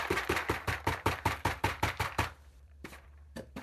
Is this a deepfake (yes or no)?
yes